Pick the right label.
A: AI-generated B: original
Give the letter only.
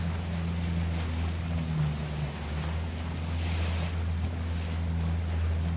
B